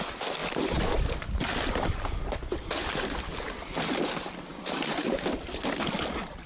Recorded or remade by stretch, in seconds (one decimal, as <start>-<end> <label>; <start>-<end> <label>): 0.0-6.5 recorded